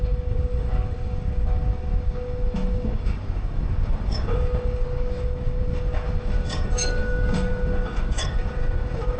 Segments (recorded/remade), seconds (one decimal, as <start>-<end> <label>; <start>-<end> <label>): 0.0-9.2 remade